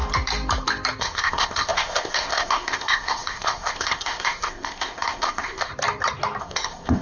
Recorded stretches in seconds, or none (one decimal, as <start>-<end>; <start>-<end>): 0.0-1.0; 5.7-6.4